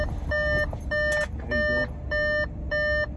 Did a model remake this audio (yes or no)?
no